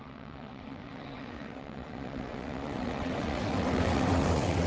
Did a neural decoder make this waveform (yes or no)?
yes